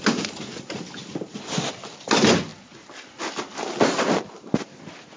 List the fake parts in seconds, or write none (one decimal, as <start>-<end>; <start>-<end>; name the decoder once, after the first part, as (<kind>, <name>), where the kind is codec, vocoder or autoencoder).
none